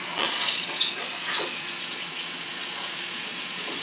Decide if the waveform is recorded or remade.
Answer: remade